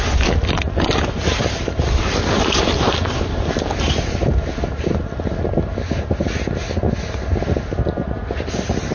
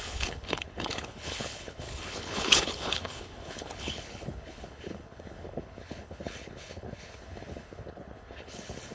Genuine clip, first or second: first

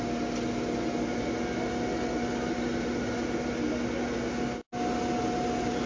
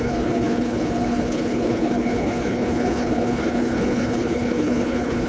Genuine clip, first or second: first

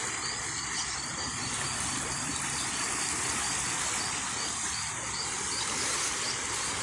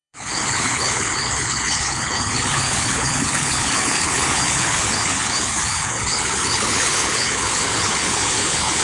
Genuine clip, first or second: first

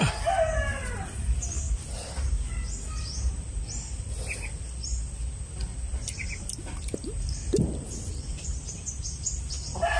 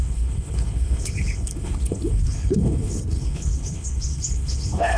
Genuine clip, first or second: first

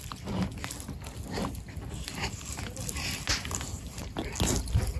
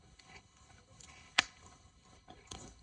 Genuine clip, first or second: first